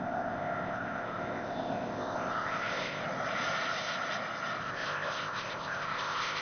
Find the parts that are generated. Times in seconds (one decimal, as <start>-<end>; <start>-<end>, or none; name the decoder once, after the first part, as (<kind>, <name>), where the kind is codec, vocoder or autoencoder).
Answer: 0.0-3.0 (codec, ZipCodec); 4.6-6.4